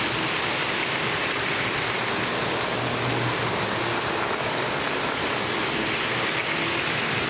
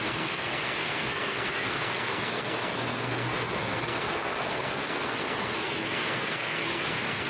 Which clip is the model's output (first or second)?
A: second